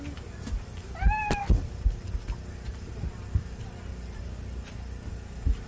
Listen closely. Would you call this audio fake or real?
real